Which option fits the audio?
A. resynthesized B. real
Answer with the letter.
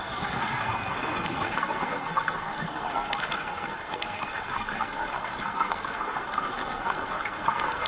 A